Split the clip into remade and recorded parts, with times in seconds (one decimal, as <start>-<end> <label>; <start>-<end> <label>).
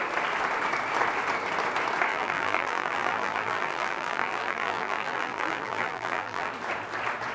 0.0-2.1 recorded; 2.1-6.5 remade; 6.5-7.3 recorded